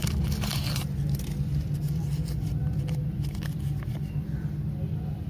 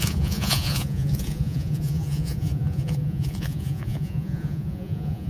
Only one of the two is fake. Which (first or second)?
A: second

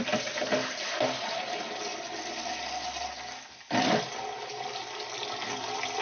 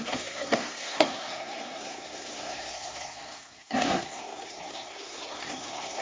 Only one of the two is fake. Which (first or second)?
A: second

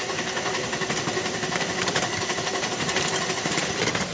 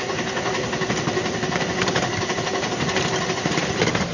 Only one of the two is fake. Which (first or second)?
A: first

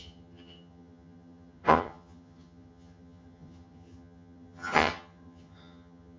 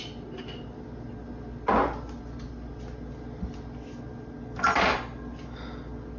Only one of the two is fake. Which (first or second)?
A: first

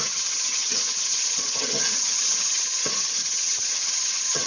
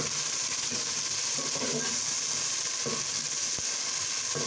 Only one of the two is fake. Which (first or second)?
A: first